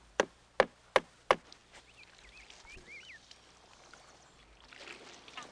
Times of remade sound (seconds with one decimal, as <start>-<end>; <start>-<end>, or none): none